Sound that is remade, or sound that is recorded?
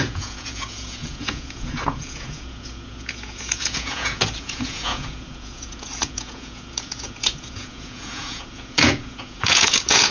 remade